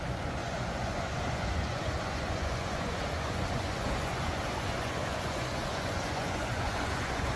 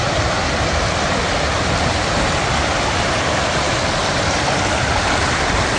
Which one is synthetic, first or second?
first